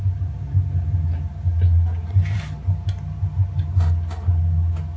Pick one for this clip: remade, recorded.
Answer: recorded